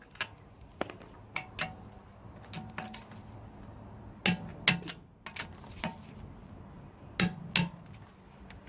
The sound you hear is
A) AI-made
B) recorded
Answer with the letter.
B